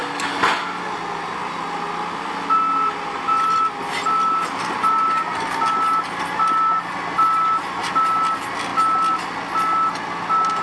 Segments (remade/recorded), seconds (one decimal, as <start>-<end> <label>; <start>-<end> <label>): 0.0-10.6 recorded